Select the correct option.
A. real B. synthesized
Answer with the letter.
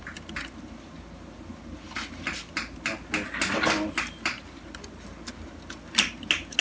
A